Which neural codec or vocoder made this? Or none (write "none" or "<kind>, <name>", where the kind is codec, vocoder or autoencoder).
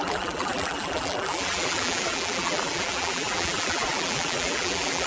vocoder, BigVGAN v2